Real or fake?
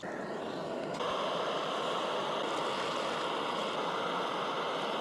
real